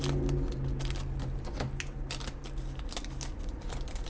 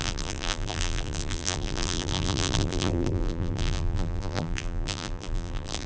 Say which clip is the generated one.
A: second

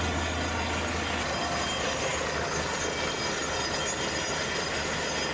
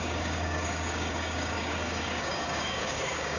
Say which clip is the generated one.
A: second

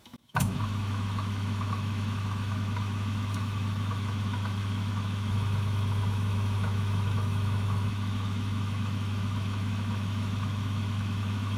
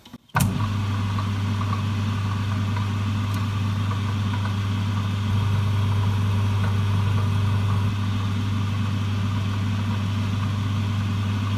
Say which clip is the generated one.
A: first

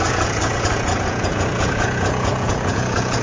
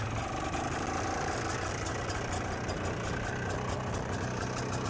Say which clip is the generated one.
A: first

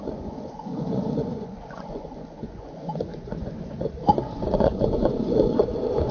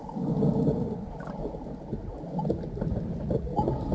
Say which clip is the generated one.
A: first